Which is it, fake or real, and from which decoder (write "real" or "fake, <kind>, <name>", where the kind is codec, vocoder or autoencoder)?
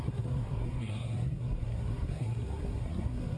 fake, codec, SNAC